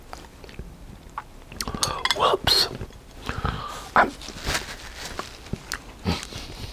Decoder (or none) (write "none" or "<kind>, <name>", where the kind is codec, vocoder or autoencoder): none